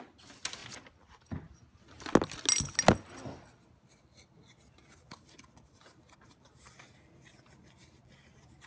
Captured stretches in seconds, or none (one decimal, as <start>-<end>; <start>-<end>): 0.0-8.7